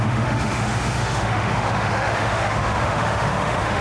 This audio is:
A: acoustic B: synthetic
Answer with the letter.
B